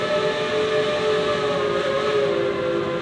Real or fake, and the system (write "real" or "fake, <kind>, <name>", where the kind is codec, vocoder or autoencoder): real